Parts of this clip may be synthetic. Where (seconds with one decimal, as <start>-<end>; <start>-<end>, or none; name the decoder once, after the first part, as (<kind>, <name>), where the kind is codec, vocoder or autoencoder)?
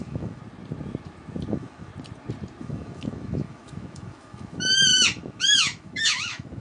0.0-0.4 (autoencoder, DAC-VAE); 1.5-1.9; 2.6-6.6